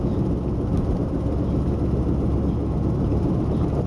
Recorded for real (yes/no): yes